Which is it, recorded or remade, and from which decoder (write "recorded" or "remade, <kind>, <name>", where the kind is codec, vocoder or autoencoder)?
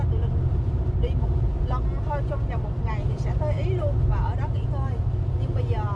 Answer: recorded